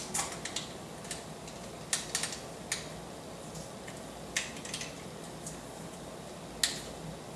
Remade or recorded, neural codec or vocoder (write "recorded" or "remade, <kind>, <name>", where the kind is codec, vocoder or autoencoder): recorded